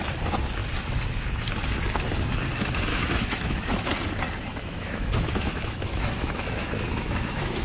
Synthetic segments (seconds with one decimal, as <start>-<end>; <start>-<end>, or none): 2.9-3.9; 4.5-7.6